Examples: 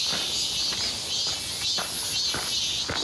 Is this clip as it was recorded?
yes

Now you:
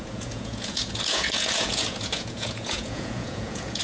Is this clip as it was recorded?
no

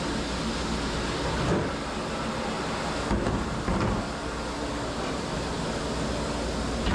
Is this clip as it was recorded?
yes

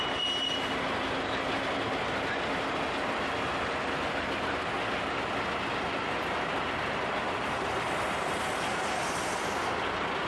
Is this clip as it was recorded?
yes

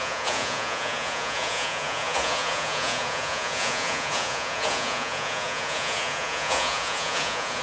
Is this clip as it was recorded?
no